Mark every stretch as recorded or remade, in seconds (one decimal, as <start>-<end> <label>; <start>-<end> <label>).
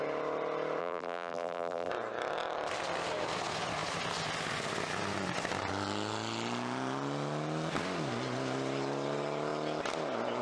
0.0-0.8 recorded; 0.8-1.9 remade; 1.9-10.4 recorded